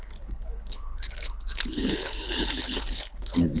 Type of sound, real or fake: fake